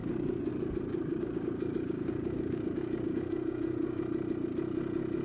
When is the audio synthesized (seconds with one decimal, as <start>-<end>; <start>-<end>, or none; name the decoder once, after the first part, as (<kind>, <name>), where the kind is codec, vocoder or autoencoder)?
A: 0.0-0.5 (codec, DAC); 0.9-4.0